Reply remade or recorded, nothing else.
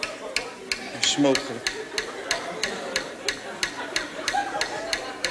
recorded